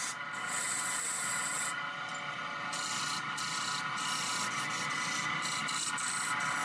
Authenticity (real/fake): real